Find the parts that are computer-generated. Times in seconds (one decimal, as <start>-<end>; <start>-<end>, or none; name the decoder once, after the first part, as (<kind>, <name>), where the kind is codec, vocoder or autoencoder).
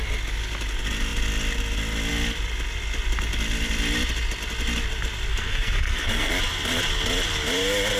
5.3-6.3 (codec, SNAC)